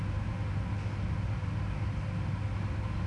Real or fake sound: real